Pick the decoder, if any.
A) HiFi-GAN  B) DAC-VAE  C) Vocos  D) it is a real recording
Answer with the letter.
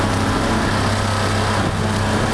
D